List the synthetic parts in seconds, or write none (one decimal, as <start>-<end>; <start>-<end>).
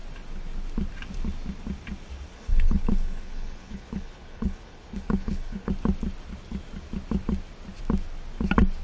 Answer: 2.3-5.7